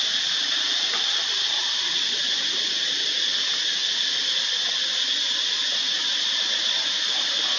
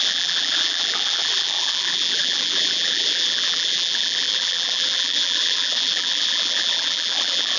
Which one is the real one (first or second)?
first